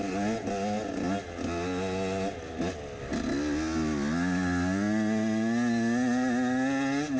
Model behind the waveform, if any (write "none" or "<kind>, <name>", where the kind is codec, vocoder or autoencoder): none